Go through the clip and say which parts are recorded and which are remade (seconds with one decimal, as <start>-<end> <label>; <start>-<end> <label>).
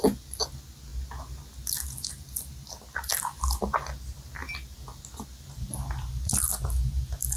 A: 0.0-7.4 recorded